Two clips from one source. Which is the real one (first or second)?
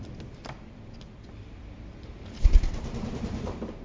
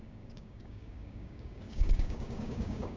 first